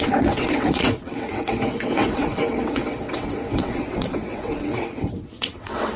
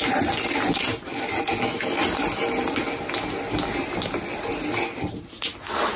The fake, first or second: first